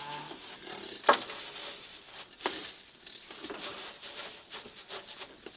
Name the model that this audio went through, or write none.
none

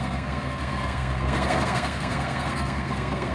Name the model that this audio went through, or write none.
codec, SNAC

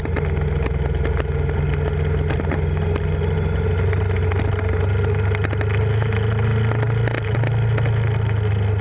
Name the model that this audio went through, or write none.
none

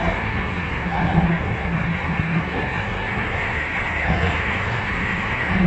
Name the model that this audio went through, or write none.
codec, SNAC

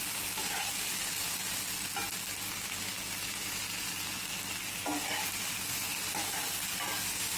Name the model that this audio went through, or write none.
none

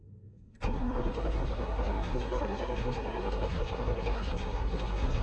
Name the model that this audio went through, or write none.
codec, SNAC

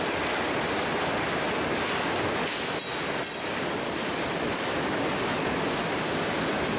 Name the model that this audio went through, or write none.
none